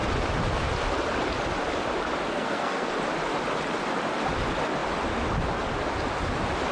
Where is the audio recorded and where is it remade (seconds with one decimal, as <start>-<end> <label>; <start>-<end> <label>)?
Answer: 0.0-2.3 recorded; 2.3-2.9 remade; 2.9-6.7 recorded